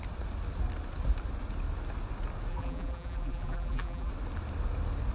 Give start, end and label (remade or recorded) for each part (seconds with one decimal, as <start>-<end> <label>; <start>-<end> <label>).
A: 0.0-2.5 recorded; 2.5-4.1 remade; 4.1-5.1 recorded